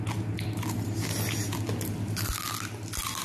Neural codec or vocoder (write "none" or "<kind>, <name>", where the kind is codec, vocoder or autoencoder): none